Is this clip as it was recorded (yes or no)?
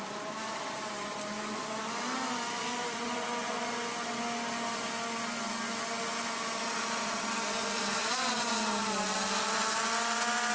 yes